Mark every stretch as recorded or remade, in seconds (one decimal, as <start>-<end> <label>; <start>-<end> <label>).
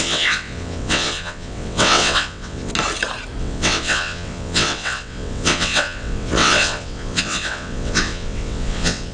0.0-2.7 remade; 2.7-3.4 recorded; 3.4-9.1 remade